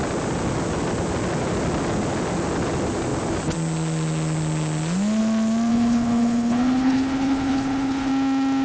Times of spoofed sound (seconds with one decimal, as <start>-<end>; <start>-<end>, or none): 5.7-8.1